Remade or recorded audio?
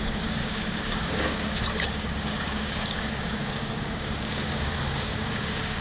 remade